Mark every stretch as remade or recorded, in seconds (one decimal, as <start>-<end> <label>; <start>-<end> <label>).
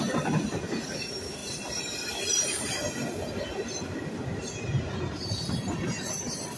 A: 0.0-1.4 recorded; 1.4-3.3 remade; 3.3-6.6 recorded